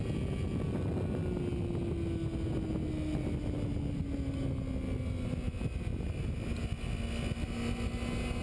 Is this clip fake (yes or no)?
no